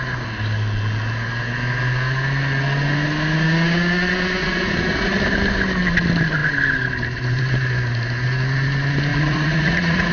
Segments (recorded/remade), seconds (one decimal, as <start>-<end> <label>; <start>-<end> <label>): 0.0-4.4 recorded; 4.4-5.2 remade; 5.2-9.1 recorded; 9.1-10.1 remade